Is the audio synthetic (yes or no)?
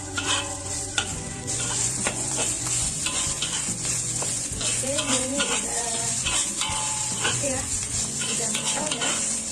yes